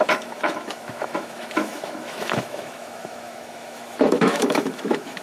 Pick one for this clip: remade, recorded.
remade